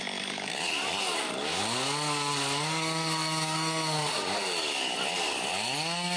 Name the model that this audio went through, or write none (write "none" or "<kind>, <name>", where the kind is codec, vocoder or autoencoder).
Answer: codec, DAC